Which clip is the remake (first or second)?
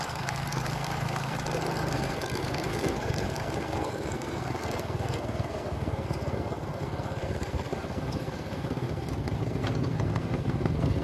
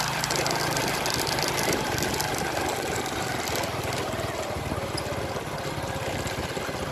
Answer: first